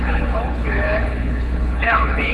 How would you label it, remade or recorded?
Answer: remade